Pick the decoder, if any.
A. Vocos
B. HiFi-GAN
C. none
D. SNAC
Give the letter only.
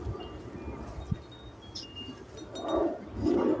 C